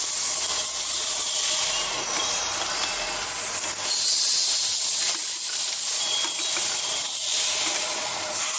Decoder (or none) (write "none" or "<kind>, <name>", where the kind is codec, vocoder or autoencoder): none